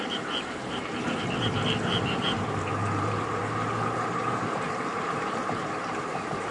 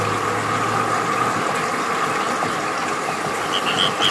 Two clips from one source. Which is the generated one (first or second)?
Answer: first